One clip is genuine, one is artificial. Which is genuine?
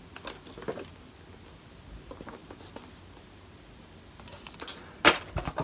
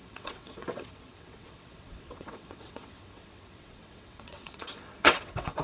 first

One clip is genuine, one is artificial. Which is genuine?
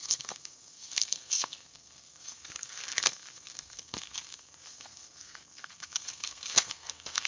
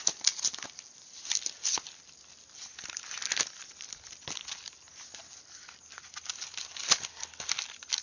second